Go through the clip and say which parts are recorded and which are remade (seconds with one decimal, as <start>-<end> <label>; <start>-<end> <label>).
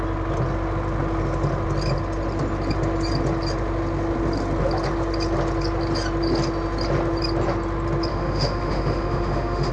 0.0-8.1 recorded; 8.1-9.7 remade